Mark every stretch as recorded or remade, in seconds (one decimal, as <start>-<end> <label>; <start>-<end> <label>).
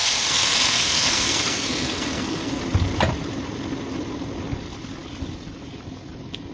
0.0-2.6 remade; 2.6-6.5 recorded